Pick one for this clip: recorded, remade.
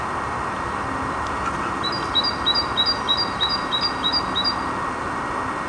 recorded